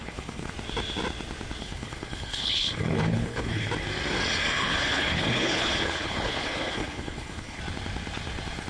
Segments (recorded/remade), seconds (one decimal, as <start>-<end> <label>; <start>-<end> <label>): 0.0-0.5 remade; 0.5-1.6 recorded; 1.6-3.7 remade; 3.7-4.6 recorded; 4.6-7.6 remade; 7.6-8.7 recorded